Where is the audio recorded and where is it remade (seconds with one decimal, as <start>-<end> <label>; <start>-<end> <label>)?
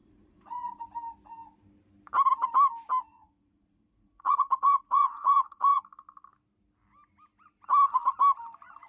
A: 0.0-0.8 remade; 0.8-3.1 recorded; 3.1-5.8 remade; 5.8-8.9 recorded